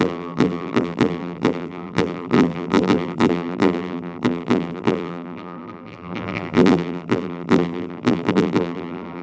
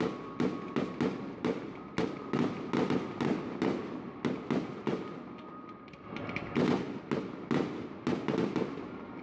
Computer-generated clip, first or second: first